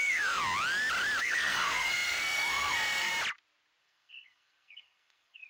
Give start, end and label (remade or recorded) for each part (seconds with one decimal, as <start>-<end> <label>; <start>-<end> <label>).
0.0-0.4 remade; 0.4-1.2 recorded; 1.2-3.1 remade; 3.1-3.8 recorded; 3.8-5.5 remade